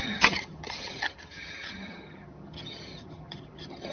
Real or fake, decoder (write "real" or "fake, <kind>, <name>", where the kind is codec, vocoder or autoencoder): fake, vocoder, HiFi-GAN